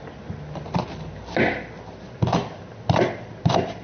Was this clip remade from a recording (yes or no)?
no